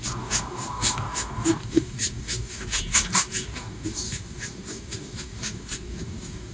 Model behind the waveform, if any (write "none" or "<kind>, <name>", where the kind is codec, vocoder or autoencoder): codec, DAC